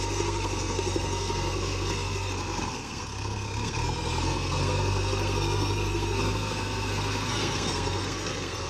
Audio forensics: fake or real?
fake